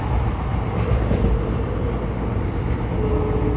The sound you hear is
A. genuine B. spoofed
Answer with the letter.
A